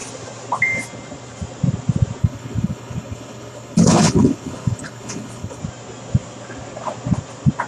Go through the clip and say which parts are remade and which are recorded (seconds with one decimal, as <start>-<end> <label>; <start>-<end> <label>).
0.0-2.2 recorded; 2.2-5.6 remade; 5.6-7.7 recorded